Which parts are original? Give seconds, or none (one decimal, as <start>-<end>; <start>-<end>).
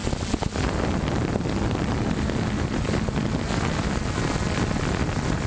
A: 0.0-5.5